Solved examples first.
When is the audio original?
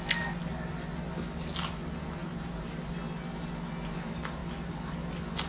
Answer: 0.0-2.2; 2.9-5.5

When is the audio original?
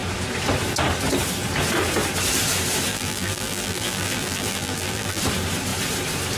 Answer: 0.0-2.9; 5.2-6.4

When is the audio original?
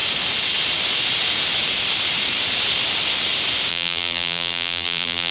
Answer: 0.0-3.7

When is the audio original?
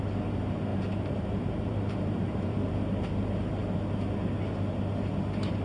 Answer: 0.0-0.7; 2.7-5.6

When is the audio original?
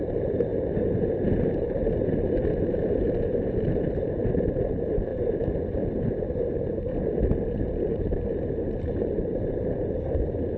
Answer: 0.5-1.3; 5.1-6.3